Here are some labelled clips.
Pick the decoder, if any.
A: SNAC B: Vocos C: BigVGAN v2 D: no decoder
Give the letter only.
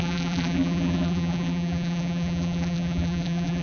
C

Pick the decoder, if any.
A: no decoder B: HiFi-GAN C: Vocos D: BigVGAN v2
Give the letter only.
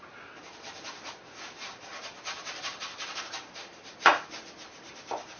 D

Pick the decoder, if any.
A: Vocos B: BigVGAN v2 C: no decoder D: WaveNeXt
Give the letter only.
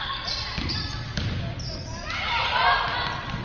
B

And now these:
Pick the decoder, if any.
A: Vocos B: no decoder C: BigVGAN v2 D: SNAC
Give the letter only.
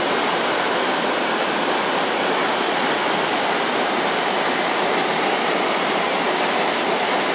B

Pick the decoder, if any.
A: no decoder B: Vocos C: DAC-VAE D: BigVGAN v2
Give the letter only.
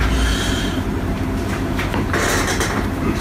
D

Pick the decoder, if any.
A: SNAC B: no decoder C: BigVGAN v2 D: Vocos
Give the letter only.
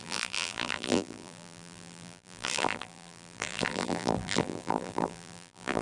C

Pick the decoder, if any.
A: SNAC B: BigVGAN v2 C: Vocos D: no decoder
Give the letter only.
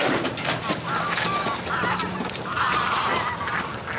D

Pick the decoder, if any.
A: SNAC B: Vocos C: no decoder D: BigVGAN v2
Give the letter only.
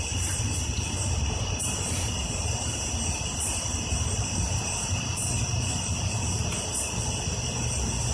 D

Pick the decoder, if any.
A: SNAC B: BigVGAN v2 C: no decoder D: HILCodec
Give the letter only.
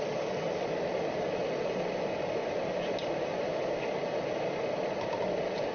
C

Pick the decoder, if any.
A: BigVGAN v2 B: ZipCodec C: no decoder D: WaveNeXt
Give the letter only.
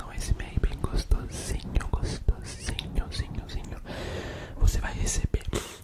A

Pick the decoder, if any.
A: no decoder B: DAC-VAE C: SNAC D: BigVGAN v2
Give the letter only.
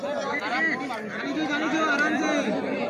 A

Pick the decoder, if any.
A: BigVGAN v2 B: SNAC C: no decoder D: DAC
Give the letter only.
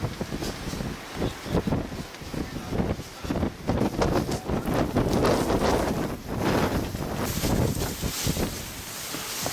C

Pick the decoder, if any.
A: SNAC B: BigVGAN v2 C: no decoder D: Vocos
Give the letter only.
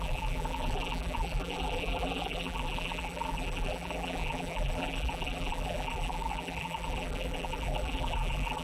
B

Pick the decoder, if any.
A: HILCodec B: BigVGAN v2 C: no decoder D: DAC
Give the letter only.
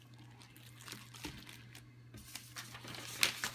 C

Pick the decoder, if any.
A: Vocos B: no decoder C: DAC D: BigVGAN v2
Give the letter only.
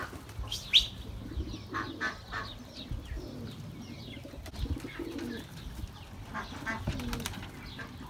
B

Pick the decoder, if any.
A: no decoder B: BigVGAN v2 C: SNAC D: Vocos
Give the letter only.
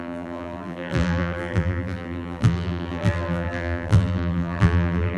B